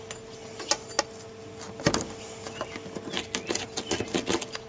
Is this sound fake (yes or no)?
no